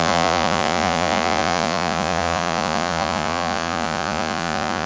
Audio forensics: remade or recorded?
remade